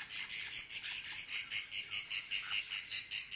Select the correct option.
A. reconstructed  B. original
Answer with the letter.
B